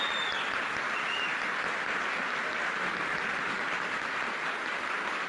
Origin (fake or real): real